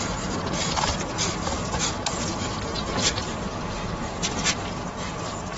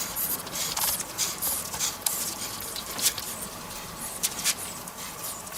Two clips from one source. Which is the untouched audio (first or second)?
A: first